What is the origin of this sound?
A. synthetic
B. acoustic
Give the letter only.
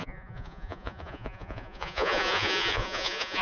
A